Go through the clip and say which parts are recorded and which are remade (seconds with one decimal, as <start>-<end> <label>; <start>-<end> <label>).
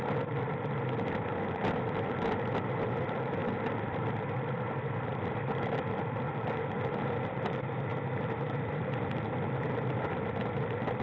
0.0-3.4 recorded; 3.4-7.0 remade; 7.0-7.9 recorded; 7.9-11.0 remade